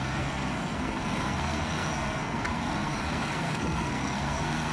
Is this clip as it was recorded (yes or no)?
no